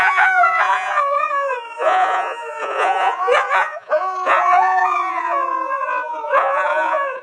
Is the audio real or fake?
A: fake